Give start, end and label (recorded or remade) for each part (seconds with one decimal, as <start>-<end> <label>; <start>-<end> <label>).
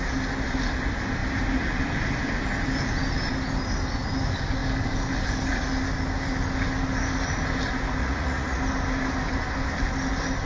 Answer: 0.0-8.0 recorded; 8.0-8.6 remade; 8.6-10.5 recorded